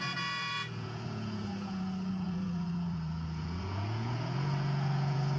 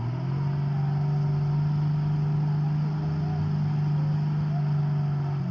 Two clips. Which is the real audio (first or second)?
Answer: second